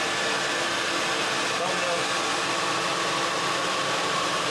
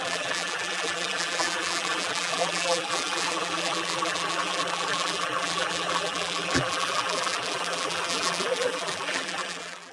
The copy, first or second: second